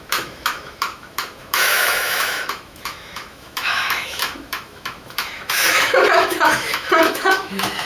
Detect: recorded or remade remade